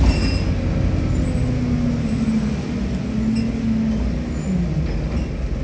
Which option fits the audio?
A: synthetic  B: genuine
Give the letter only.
B